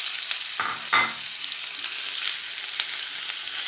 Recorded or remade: recorded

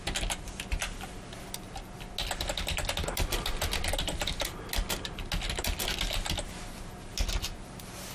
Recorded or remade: recorded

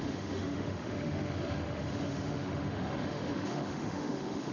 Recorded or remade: remade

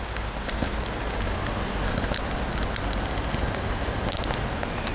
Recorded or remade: recorded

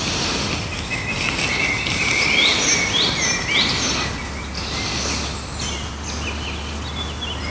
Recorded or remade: recorded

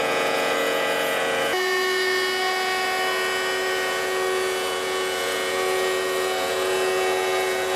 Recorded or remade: remade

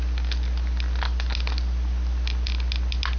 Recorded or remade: recorded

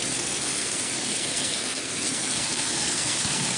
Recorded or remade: remade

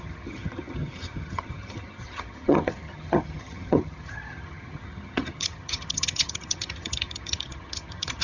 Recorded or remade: remade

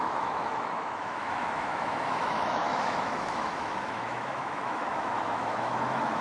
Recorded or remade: remade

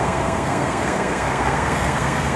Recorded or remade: remade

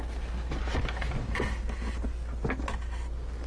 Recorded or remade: recorded